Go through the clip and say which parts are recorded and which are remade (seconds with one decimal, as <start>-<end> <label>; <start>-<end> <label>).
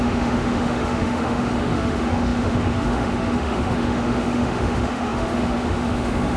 0.0-6.4 remade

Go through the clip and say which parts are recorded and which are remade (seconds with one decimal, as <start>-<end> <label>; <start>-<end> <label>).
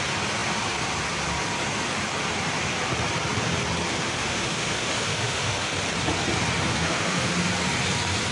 0.0-3.9 recorded; 3.9-5.7 remade; 5.7-6.7 recorded; 6.7-7.3 remade; 7.3-8.3 recorded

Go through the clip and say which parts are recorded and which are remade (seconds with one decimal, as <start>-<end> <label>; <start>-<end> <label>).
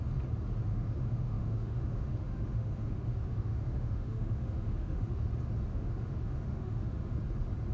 0.0-0.7 recorded; 0.7-5.3 remade; 5.3-5.7 recorded; 5.7-7.2 remade; 7.2-7.7 recorded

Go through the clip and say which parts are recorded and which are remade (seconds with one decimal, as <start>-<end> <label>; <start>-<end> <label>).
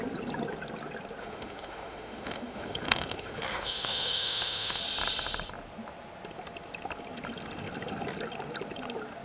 0.0-1.2 recorded; 1.2-4.8 remade; 4.8-9.2 recorded